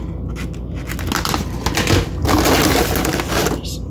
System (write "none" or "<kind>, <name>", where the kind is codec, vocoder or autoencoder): none